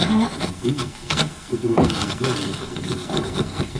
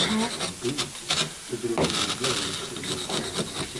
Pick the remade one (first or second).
first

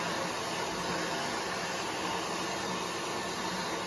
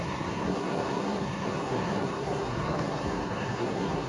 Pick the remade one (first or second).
second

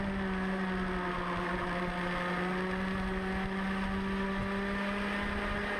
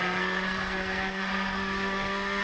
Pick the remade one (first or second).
second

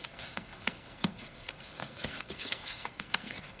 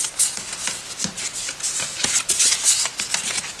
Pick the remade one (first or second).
first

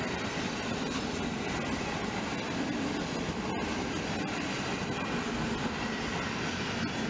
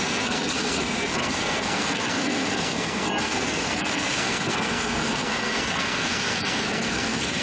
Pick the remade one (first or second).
second